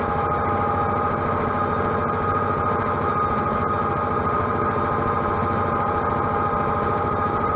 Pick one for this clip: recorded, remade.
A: recorded